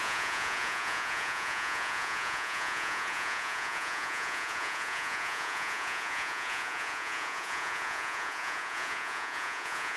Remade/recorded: remade